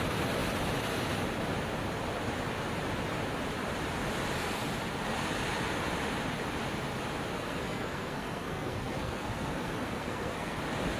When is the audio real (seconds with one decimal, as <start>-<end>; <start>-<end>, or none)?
0.0-7.3; 10.6-11.0